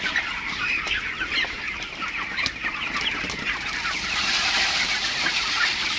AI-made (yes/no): no